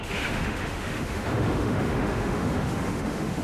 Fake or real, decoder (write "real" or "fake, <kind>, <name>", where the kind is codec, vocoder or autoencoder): fake, autoencoder, DAC-VAE